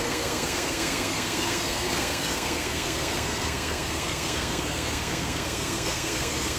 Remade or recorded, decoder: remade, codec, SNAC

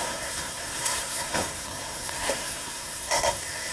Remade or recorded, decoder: remade, codec, SNAC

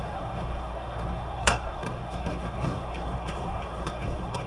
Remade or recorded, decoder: remade, codec, SNAC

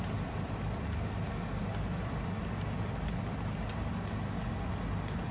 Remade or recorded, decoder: recorded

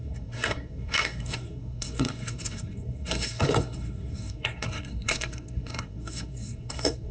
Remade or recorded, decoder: remade, codec, SNAC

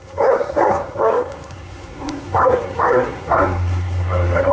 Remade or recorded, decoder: remade, codec, SNAC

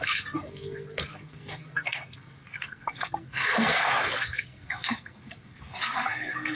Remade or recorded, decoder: remade, codec, SNAC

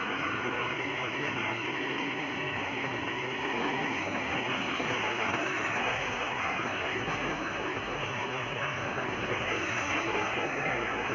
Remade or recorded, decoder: remade, codec, SNAC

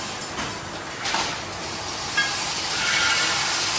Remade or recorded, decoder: recorded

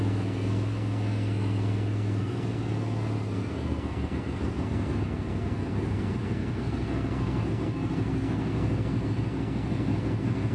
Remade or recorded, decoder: remade, codec, SNAC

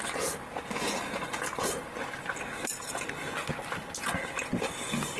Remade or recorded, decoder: recorded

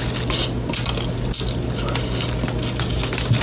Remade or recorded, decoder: recorded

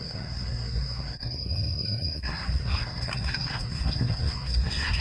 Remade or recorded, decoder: remade, codec, SNAC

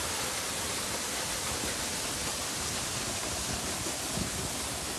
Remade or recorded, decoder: recorded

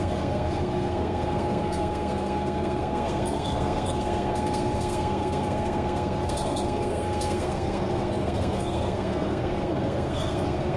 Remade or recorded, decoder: remade, codec, SNAC